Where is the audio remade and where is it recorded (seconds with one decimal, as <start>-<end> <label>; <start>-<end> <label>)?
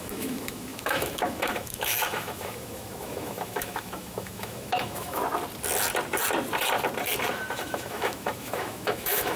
0.0-5.2 remade; 5.2-7.5 recorded; 7.5-9.4 remade